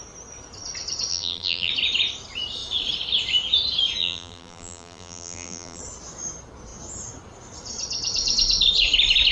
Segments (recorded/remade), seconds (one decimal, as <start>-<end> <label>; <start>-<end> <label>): 0.0-1.1 recorded; 1.1-1.7 remade; 1.7-4.0 recorded; 4.0-5.8 remade; 5.8-9.3 recorded